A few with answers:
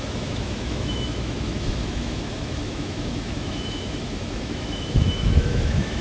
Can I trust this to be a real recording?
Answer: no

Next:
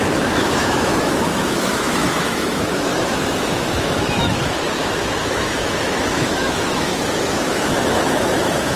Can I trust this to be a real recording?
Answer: no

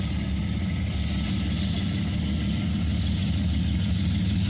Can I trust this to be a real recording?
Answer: yes